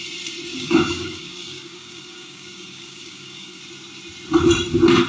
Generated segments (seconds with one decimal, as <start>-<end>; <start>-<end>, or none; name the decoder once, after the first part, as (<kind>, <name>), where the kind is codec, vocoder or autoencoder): 0.5-3.6 (codec, DAC)